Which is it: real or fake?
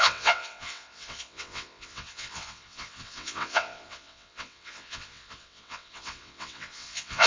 fake